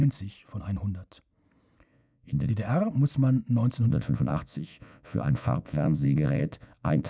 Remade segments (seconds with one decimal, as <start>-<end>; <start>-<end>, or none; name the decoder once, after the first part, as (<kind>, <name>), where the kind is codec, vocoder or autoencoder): 1.9-2.5 (vocoder, Vocos); 3.9-7.1